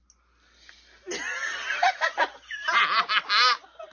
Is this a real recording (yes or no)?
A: yes